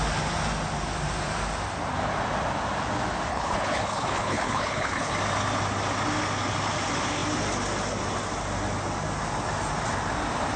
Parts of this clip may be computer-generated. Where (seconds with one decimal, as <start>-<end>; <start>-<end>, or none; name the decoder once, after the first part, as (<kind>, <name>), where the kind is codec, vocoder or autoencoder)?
3.3-5.1 (codec, HILCodec)